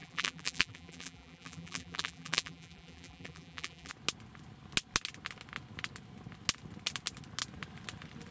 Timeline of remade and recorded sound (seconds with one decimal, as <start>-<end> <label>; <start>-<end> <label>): 0.0-3.9 remade; 3.9-8.3 recorded